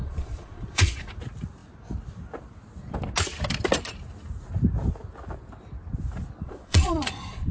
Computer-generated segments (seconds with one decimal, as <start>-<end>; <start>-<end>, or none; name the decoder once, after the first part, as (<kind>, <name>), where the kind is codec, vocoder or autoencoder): 0.0-1.1 (vocoder, Vocos); 6.4-7.5